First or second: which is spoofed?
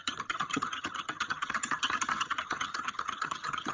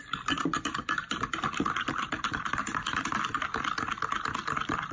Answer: first